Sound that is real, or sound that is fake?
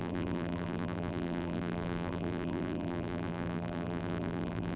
fake